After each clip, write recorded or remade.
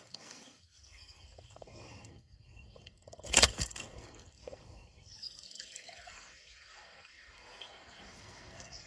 remade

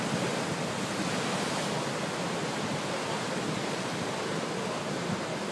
recorded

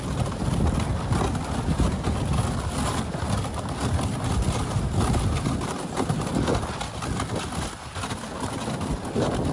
recorded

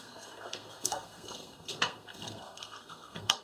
remade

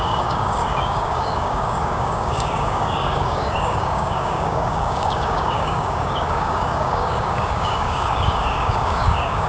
remade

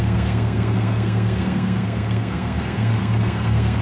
remade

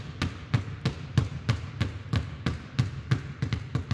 recorded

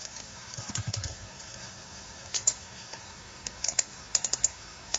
remade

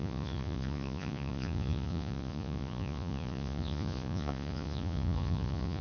remade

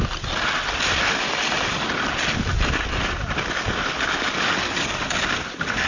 recorded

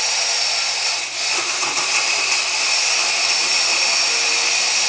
recorded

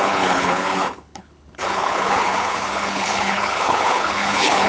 remade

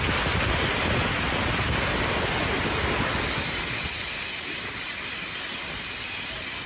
recorded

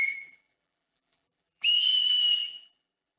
remade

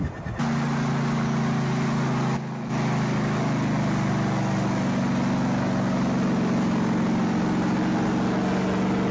recorded